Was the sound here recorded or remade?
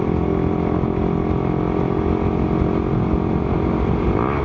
recorded